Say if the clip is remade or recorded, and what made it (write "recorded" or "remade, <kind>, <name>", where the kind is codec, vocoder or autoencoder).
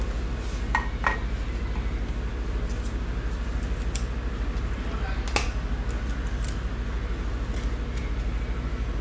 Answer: recorded